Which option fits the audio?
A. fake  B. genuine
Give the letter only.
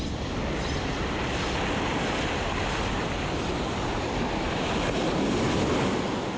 B